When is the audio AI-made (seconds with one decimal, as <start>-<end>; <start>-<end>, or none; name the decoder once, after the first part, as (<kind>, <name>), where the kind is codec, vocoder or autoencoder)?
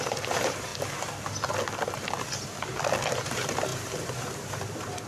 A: 0.0-0.7 (vocoder, BigVGAN v2); 3.1-5.1